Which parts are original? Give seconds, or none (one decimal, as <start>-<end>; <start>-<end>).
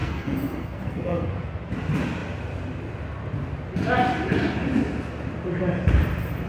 1.3-6.5